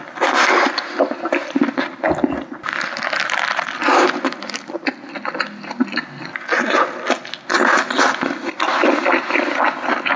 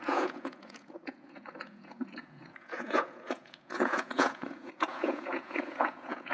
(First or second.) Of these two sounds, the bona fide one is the first